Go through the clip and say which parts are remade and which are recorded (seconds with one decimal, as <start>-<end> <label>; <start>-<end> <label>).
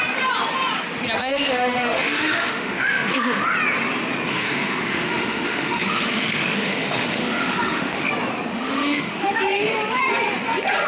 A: 0.0-1.2 recorded; 1.2-3.4 remade; 3.4-4.3 recorded; 4.3-8.1 remade; 8.1-8.5 recorded; 8.5-9.7 remade; 9.7-10.9 recorded